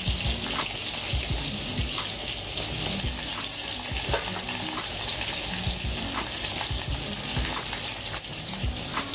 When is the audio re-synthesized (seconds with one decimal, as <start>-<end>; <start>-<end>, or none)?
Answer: 1.1-1.7; 8.3-9.1